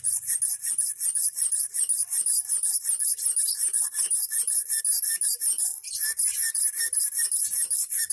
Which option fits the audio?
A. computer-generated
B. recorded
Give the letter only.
B